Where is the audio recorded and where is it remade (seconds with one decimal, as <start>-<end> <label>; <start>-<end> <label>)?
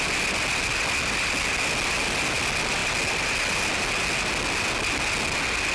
0.0-5.7 recorded